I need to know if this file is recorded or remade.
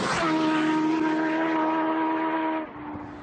recorded